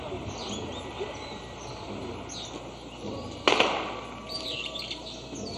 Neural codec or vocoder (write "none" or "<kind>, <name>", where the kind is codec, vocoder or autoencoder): none